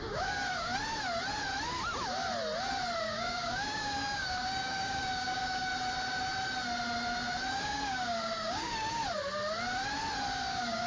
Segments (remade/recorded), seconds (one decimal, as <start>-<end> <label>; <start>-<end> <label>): 0.0-0.7 remade; 0.7-3.0 recorded; 3.0-5.7 remade; 5.7-7.5 recorded; 7.5-9.0 remade; 9.0-10.5 recorded; 10.5-10.9 remade